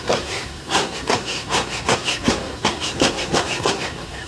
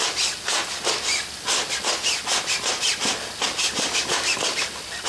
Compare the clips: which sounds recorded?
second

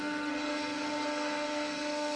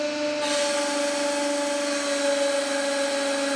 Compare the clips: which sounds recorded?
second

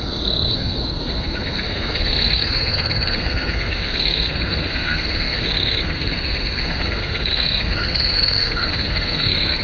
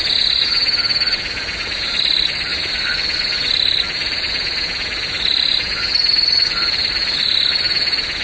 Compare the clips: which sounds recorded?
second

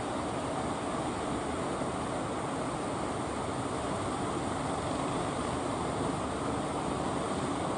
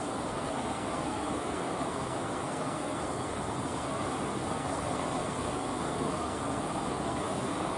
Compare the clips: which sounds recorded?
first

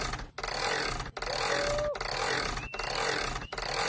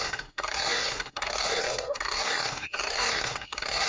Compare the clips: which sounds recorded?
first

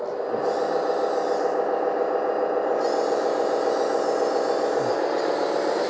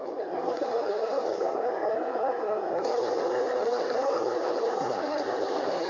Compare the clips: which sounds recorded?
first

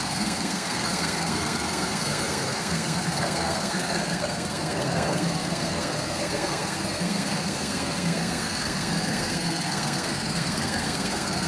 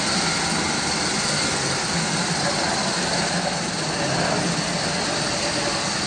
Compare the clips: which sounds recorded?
second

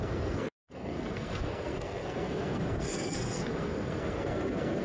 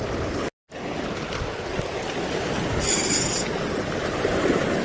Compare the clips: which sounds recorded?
second